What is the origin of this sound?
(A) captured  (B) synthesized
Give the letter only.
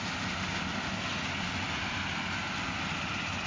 A